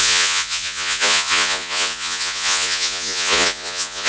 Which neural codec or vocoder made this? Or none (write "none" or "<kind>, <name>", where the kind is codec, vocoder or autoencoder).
vocoder, Vocos